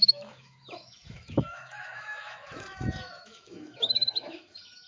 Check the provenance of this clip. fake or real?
fake